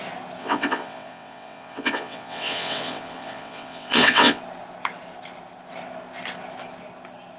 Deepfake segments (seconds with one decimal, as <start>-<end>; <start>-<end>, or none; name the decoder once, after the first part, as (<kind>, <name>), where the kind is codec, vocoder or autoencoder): 0.4-4.4 (vocoder, WaveNeXt)